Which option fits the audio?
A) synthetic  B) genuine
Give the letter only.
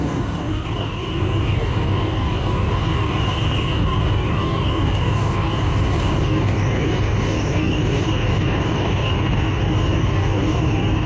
A